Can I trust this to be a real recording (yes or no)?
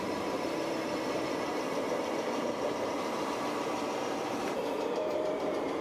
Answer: no